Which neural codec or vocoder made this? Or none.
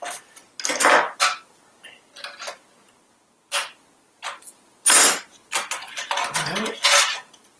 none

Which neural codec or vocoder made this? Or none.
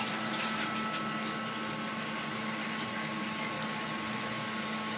none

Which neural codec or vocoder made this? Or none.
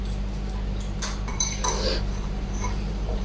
vocoder, BigVGAN v2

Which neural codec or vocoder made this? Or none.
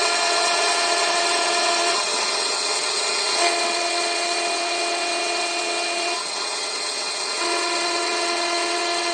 vocoder, WaveNeXt